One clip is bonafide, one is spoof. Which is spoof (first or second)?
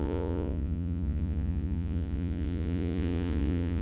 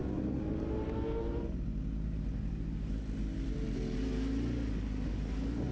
first